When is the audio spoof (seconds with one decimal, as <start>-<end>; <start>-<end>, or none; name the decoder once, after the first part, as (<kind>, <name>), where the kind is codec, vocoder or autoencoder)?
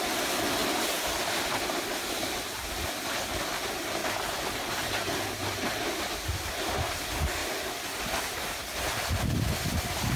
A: 4.0-6.9 (vocoder, BigVGAN v2)